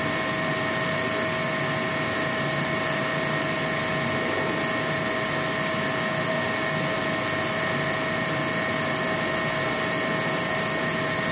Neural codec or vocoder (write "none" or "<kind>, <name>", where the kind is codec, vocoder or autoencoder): none